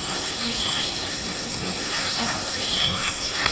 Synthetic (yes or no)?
yes